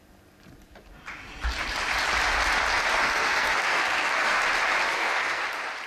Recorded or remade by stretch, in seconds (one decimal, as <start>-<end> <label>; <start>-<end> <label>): 0.0-3.0 recorded; 3.0-4.4 remade; 4.4-4.9 recorded; 4.9-5.4 remade; 5.4-5.9 recorded